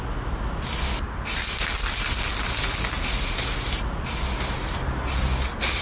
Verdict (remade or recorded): recorded